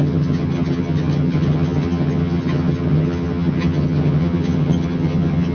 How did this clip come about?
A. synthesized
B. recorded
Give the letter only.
A